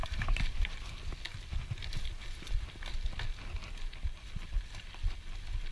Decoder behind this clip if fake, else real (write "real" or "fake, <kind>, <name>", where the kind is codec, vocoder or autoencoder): real